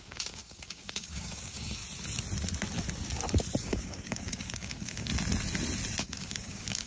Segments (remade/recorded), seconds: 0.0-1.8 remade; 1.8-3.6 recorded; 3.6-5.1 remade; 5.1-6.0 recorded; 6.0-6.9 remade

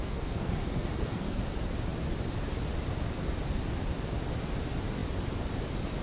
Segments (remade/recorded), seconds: 0.0-1.4 remade; 1.4-6.0 recorded

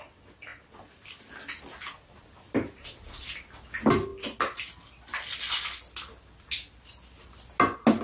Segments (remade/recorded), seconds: 0.0-8.0 recorded

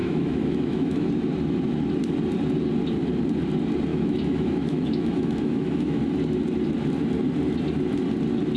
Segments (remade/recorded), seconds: 0.0-1.1 remade; 1.1-3.9 recorded; 3.9-6.0 remade; 6.0-8.6 recorded

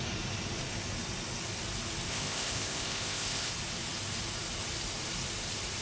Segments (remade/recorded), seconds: 0.0-2.1 recorded; 2.1-3.5 remade; 3.5-5.8 recorded

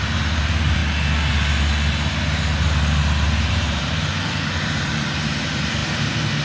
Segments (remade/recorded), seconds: 0.0-0.8 remade; 0.8-3.5 recorded; 3.5-6.4 remade

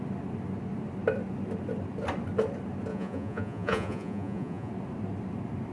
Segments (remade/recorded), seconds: 0.0-2.9 recorded; 2.9-4.7 remade; 4.7-5.7 recorded

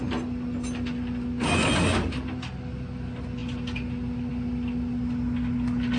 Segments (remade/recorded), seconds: 0.0-6.0 recorded